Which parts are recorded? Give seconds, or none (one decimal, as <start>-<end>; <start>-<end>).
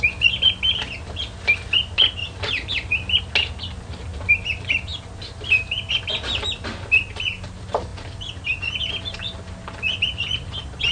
0.0-2.2; 3.2-10.9